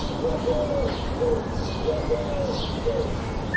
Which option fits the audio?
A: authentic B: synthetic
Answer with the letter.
A